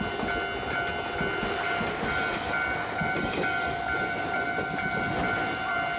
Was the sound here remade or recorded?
recorded